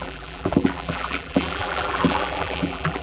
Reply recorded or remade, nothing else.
remade